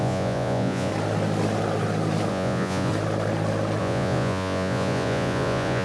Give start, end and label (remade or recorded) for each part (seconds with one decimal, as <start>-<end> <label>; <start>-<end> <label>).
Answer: 0.0-0.9 remade; 0.9-2.3 recorded; 2.3-2.9 remade; 2.9-3.8 recorded; 3.8-5.8 remade